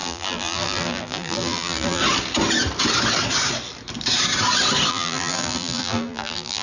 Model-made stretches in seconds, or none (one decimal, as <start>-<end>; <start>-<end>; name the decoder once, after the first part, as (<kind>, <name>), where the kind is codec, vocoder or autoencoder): 0.0-2.0 (vocoder, BigVGAN v2); 4.9-6.6